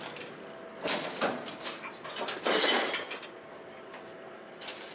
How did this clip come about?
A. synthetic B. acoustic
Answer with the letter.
B